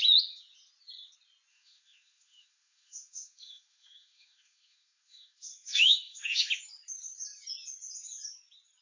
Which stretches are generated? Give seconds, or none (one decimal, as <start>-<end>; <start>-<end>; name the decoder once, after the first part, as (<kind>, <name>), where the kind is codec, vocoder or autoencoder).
1.5-6.5 (autoencoder, DAC-VAE)